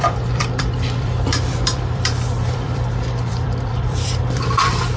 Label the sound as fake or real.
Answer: fake